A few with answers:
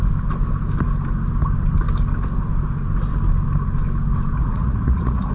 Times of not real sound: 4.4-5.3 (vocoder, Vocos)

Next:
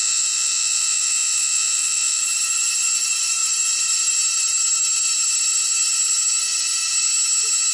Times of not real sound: 0.0-2.2 (vocoder, Vocos)

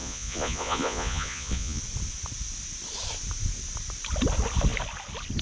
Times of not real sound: 0.0-1.8 (vocoder, Vocos)

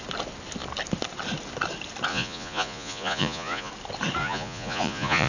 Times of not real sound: 2.1-3.7 (vocoder, Vocos); 4.2-5.3

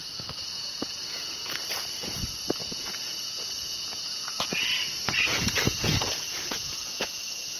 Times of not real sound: 0.5-1.5 (vocoder, Vocos); 2.6-7.6